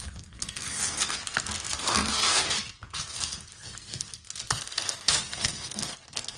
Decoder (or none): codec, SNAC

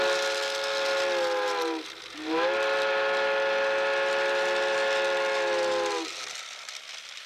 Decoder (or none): none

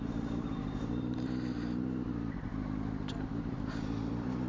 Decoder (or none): none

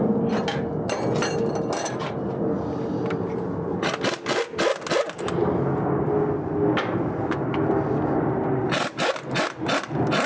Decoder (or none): none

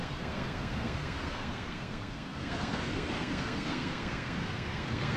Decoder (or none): codec, SNAC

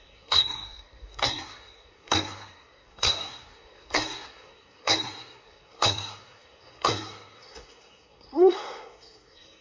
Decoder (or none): codec, SNAC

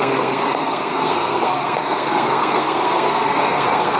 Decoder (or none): codec, SNAC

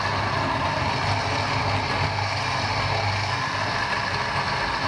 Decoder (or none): none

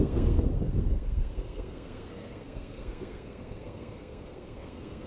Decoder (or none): codec, SNAC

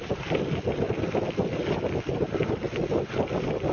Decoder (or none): none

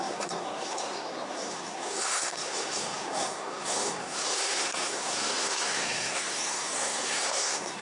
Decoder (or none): codec, SNAC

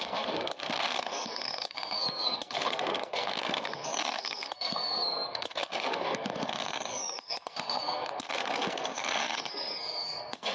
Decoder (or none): codec, SNAC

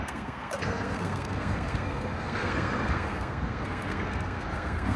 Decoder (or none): codec, SNAC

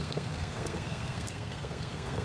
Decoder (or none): codec, SNAC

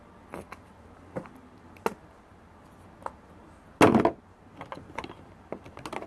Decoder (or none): none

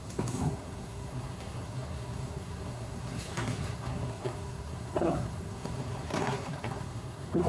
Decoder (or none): codec, SNAC